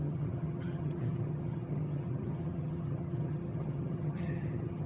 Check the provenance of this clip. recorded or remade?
remade